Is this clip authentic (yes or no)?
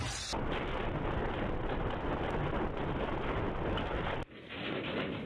yes